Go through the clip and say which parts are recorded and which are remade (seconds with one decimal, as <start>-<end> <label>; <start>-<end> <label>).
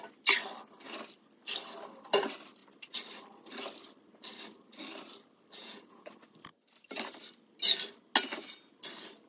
0.0-5.6 recorded; 5.6-6.1 remade; 6.1-9.3 recorded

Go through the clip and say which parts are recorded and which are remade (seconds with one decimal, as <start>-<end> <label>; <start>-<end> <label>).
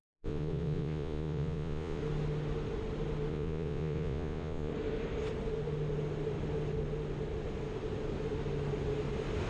0.0-2.0 remade; 2.0-3.3 recorded; 3.3-4.7 remade; 4.7-9.5 recorded